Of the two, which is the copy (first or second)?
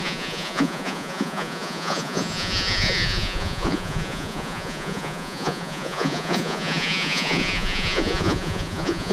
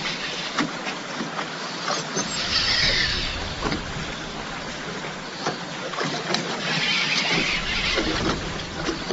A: first